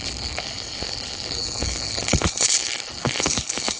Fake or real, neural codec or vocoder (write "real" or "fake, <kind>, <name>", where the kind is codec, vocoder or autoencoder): fake, codec, HILCodec